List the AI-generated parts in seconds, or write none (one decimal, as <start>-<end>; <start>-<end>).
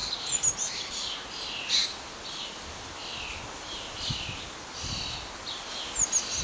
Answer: none